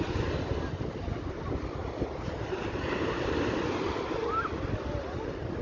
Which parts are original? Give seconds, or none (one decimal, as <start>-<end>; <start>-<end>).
0.0-1.8; 2.7-5.6